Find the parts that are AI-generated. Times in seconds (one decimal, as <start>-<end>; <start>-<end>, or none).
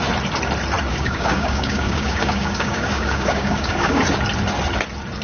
0.9-4.0